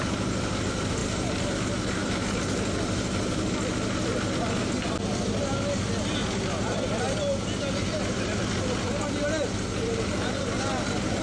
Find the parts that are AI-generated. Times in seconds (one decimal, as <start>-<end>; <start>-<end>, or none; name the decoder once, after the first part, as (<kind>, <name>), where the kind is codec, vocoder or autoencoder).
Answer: none